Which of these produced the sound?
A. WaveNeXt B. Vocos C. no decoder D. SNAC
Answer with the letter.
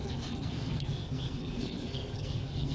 D